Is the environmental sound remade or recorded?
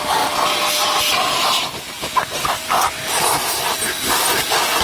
recorded